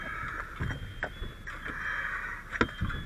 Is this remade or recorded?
recorded